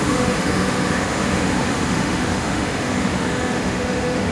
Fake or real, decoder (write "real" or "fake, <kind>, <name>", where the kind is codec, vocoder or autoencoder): fake, autoencoder, DAC-VAE